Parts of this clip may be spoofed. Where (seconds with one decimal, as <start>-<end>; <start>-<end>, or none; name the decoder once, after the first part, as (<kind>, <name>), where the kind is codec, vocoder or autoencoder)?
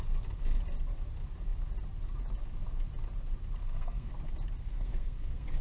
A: 3.6-4.1 (codec, SNAC); 4.7-5.6